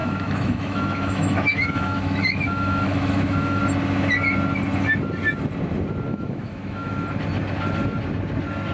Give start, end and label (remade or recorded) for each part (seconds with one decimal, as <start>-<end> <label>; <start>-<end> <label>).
0.0-3.6 remade; 3.6-6.1 recorded; 6.1-6.9 remade; 6.9-8.7 recorded